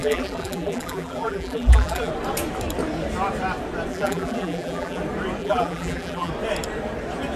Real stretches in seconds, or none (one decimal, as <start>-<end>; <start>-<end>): 2.1-3.9; 5.0-5.4; 6.3-7.4